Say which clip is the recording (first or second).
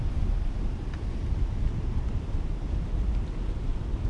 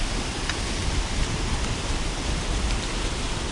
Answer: first